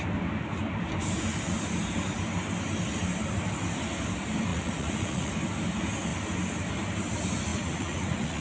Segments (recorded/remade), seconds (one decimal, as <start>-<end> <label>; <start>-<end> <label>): 0.0-4.5 recorded; 4.5-5.3 remade; 5.3-7.5 recorded; 7.5-8.4 remade